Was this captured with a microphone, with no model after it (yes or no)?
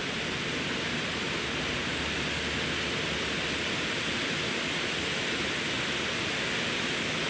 yes